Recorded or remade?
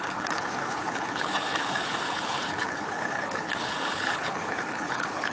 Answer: remade